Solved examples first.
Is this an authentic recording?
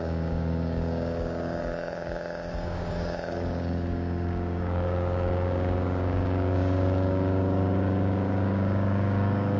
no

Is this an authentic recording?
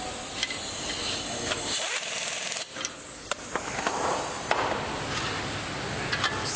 yes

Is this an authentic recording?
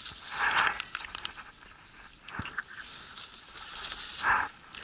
yes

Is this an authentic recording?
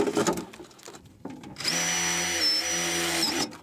yes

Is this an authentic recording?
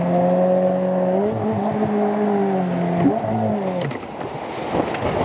yes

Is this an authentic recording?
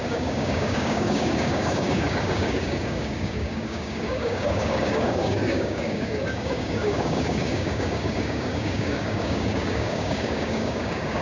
no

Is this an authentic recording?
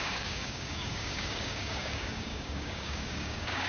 no